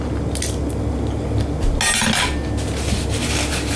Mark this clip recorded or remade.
recorded